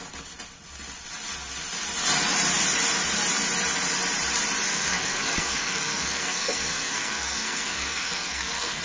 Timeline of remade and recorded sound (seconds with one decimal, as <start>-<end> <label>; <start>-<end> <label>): 0.0-4.7 recorded; 4.7-8.8 remade